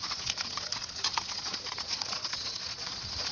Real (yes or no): no